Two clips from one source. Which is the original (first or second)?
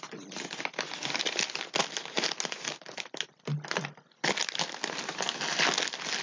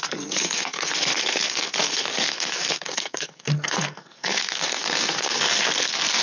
first